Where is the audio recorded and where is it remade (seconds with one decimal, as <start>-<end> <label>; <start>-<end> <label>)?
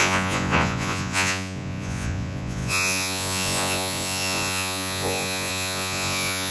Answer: 0.0-6.5 remade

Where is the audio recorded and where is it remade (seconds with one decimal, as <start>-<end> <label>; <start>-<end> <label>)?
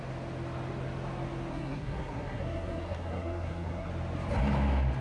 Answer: 0.0-1.5 recorded; 1.5-3.9 remade; 3.9-5.0 recorded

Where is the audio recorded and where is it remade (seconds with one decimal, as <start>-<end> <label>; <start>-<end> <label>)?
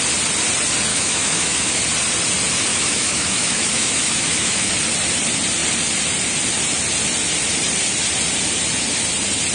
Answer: 0.0-0.9 recorded; 0.9-1.8 remade; 1.8-2.7 recorded; 2.7-4.7 remade; 4.7-9.5 recorded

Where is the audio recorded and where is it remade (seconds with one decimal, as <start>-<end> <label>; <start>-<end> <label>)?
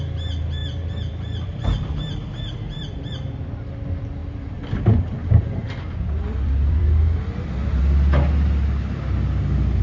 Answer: 0.0-0.6 recorded; 0.6-3.1 remade; 3.1-4.2 recorded; 4.2-7.8 remade; 7.8-9.8 recorded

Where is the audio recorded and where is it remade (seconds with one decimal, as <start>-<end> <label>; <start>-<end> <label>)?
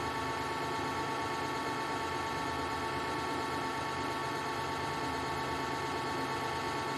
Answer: 0.0-4.2 recorded; 4.2-4.9 remade; 4.9-7.0 recorded